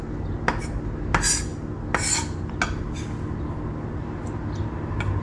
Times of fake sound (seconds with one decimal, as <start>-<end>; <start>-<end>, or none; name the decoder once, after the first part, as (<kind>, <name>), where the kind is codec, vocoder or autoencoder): none